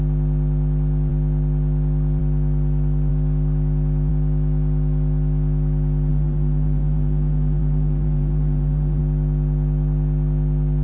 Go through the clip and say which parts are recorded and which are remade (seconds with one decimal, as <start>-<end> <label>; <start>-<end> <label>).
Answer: 0.0-6.1 recorded; 6.1-9.0 remade; 9.0-10.8 recorded

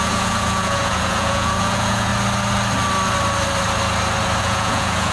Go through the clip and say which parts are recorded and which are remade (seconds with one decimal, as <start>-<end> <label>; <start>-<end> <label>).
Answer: 0.0-2.1 remade; 2.1-4.4 recorded; 4.4-5.1 remade

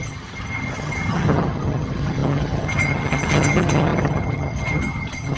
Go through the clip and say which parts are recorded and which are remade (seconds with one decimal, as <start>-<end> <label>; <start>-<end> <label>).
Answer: 0.0-5.4 remade

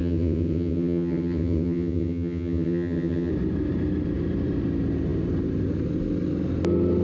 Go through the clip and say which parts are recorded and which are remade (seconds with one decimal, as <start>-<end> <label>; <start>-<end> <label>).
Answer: 0.0-3.3 remade; 3.3-7.0 recorded

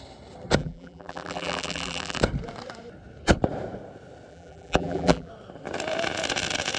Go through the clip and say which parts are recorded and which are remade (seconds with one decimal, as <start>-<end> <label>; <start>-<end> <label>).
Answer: 0.0-0.6 recorded; 0.6-2.2 remade; 2.2-4.3 recorded; 4.3-5.3 remade; 5.3-6.8 recorded

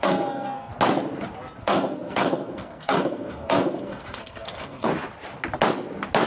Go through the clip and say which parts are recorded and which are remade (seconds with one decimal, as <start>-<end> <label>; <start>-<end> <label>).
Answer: 0.0-0.7 remade; 0.7-1.6 recorded; 1.6-4.9 remade; 4.9-6.3 recorded